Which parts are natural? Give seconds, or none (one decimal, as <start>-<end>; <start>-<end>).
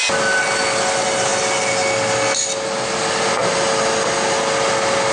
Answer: 0.0-5.1